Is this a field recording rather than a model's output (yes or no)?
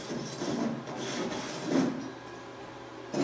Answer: yes